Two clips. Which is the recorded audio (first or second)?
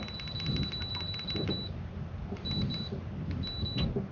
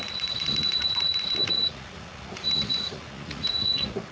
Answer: first